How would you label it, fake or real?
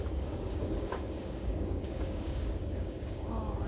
fake